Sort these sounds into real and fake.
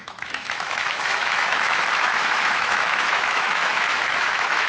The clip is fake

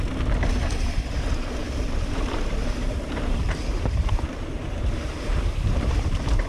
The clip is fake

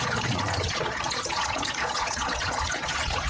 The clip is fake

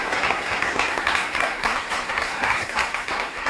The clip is fake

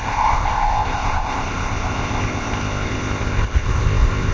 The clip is fake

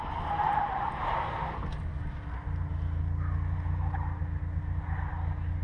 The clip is real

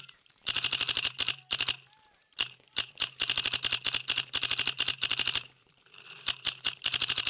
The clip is fake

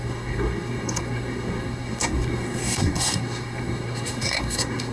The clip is fake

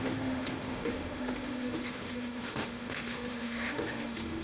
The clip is fake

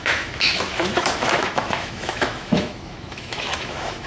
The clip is fake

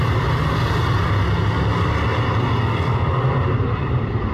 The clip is real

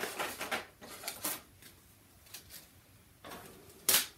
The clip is real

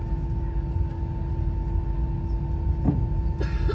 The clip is real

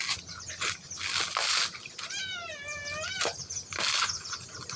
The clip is real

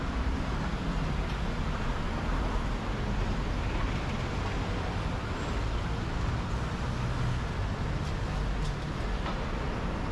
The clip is real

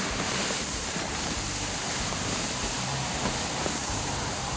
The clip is fake